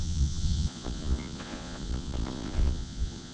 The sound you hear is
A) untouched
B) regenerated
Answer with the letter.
B